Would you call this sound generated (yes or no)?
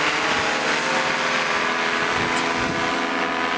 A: no